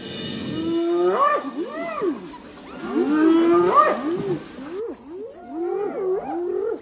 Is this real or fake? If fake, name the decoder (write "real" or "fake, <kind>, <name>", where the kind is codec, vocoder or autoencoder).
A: real